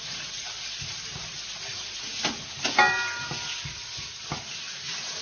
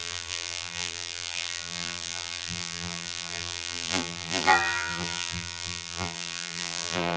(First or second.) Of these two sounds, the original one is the first